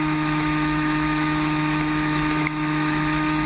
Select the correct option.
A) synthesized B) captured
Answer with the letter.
A